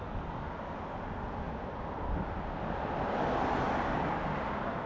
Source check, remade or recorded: recorded